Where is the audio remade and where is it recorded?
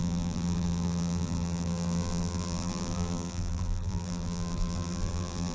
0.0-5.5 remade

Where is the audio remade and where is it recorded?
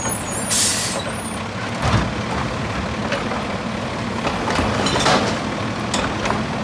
0.0-6.6 recorded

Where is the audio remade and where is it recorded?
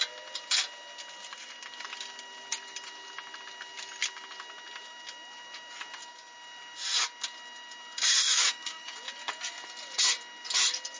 0.0-8.2 recorded; 8.2-8.9 remade; 8.9-11.0 recorded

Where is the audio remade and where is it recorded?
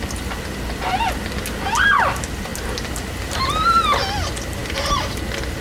0.0-5.6 recorded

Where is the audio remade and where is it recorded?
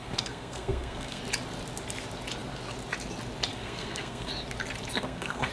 0.0-1.2 remade; 1.2-3.5 recorded; 3.5-4.3 remade; 4.3-4.9 recorded; 4.9-5.5 remade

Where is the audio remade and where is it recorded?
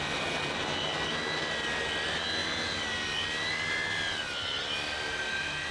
0.0-5.7 recorded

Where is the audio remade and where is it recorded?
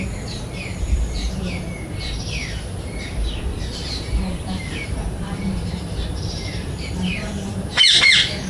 0.0-0.7 recorded; 0.7-1.3 remade; 1.3-3.5 recorded; 3.5-8.0 remade; 8.0-8.5 recorded